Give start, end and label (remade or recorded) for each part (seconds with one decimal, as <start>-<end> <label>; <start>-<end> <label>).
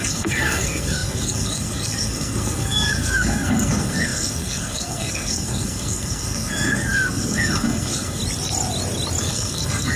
0.0-8.2 remade; 8.2-9.2 recorded; 9.2-10.0 remade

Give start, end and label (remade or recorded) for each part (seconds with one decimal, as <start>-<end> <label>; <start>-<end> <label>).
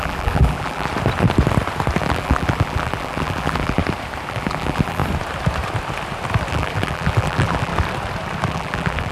0.0-0.9 remade; 0.9-2.0 recorded; 2.0-3.8 remade; 3.8-4.3 recorded; 4.3-5.0 remade; 5.0-6.5 recorded; 6.5-7.7 remade; 7.7-8.5 recorded; 8.5-9.1 remade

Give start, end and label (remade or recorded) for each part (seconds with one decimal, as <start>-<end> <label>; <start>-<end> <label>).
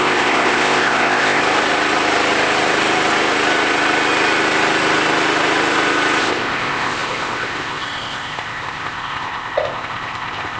0.0-1.4 remade; 1.4-6.2 recorded; 6.2-10.6 remade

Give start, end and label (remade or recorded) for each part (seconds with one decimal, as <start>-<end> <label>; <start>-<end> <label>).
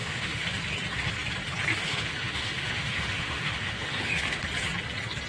0.0-0.6 remade; 0.6-1.7 recorded; 1.7-4.4 remade; 4.4-5.3 recorded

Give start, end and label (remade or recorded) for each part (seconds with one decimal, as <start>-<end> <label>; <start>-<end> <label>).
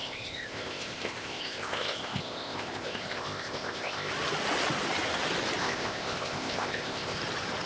0.0-4.1 remade; 4.1-5.6 recorded; 5.6-7.2 remade; 7.2-7.7 recorded